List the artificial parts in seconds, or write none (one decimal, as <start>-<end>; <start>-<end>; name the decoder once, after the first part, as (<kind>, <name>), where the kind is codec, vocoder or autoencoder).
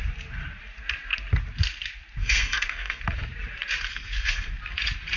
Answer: 2.2-3.0 (codec, SNAC); 3.9-4.5